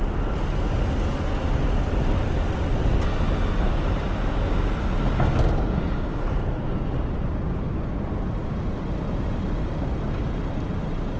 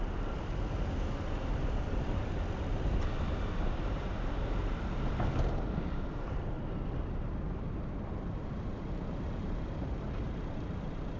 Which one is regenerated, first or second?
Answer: second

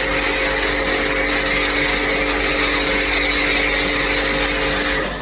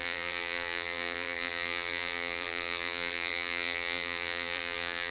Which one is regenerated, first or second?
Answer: second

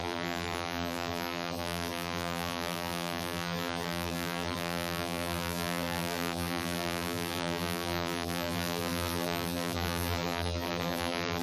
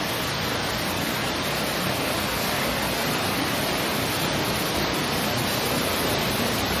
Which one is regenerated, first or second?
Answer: first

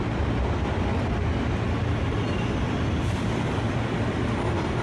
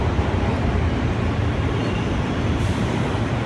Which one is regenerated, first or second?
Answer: second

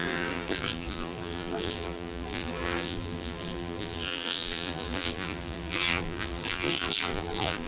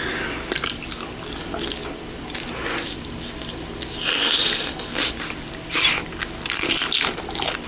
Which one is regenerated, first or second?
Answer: first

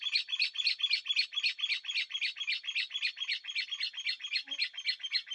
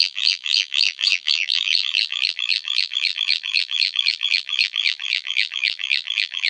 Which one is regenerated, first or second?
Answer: second